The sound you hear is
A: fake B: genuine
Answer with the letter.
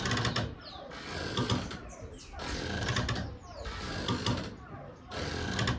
B